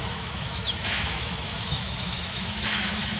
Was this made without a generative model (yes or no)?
no